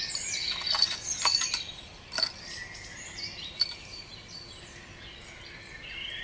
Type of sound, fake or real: real